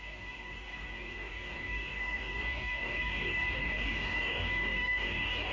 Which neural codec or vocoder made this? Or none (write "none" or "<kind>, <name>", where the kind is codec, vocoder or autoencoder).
codec, DAC